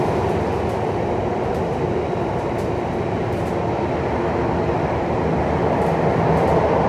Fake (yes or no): no